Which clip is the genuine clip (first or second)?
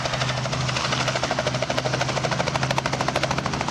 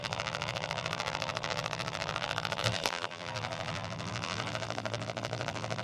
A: first